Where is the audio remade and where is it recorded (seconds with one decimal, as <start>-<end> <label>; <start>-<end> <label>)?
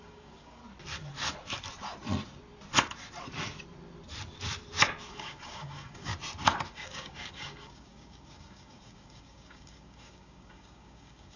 0.0-0.6 remade; 0.6-5.1 recorded; 5.1-6.1 remade; 6.1-6.7 recorded; 6.7-11.4 remade